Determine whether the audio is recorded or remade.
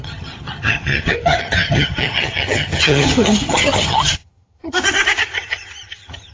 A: remade